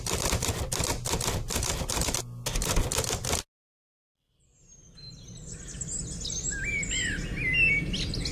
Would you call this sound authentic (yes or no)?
yes